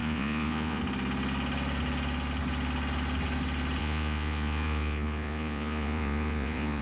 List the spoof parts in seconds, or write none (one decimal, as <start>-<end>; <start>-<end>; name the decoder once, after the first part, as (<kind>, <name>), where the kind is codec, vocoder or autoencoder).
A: 0.0-0.8 (vocoder, Vocos); 3.8-6.8